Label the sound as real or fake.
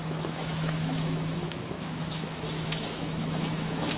fake